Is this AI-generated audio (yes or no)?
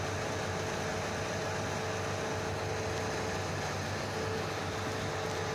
no